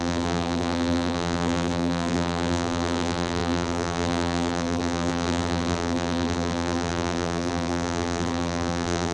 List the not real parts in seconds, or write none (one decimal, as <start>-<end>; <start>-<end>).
0.0-9.1